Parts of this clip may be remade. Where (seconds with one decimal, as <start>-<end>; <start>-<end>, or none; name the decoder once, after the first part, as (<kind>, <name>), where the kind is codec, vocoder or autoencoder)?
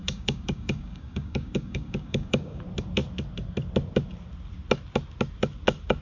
0.0-2.6 (codec, DAC)